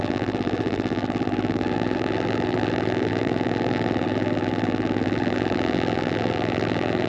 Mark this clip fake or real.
fake